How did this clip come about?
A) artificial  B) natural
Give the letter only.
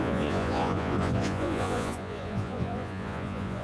A